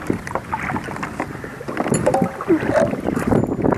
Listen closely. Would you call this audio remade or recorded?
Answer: recorded